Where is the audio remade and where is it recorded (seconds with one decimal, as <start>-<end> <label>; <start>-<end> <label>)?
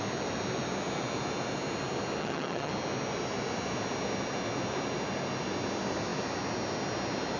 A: 0.0-2.2 recorded; 2.2-2.7 remade; 2.7-7.4 recorded